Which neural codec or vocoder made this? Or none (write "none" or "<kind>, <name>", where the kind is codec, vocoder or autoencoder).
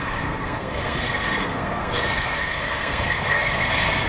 codec, SNAC